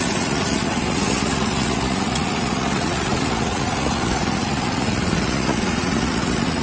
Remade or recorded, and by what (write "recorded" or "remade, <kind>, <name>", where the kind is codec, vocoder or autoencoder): remade, vocoder, Vocos